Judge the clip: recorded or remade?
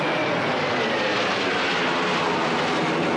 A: recorded